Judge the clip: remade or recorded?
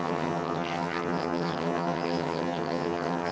remade